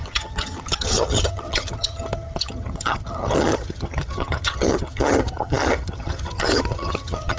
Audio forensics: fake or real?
fake